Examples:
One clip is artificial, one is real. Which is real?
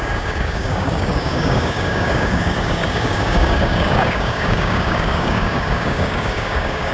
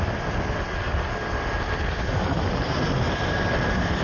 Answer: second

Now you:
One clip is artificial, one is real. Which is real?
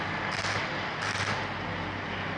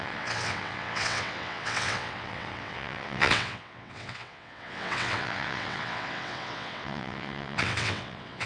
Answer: first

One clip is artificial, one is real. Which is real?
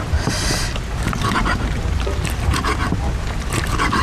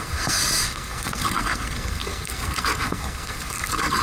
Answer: first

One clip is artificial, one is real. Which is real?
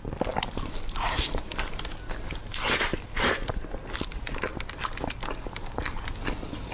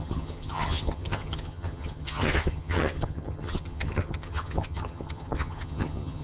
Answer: first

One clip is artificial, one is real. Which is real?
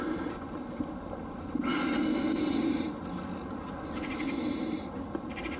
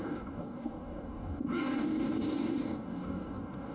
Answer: first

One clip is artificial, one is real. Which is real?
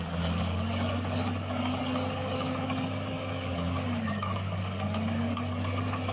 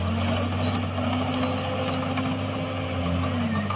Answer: second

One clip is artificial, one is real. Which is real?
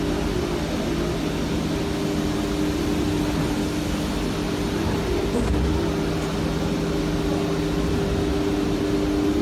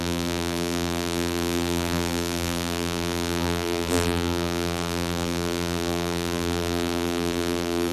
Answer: first